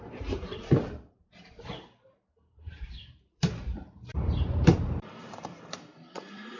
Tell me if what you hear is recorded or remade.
remade